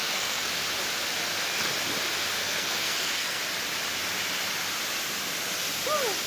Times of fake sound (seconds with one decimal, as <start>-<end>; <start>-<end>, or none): 0.0-0.5; 2.4-3.4